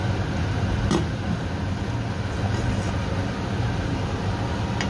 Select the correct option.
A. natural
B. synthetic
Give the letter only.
A